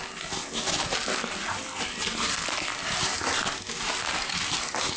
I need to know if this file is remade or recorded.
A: recorded